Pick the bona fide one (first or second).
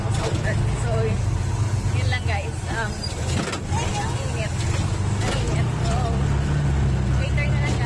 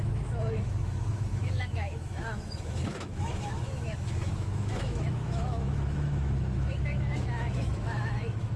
first